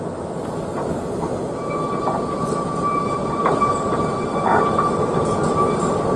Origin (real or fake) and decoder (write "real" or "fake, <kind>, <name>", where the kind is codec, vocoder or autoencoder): real